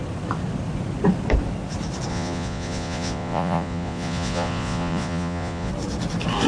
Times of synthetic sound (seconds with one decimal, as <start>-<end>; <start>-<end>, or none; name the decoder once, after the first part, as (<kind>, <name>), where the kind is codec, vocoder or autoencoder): 2.1-5.7 (vocoder, Vocos)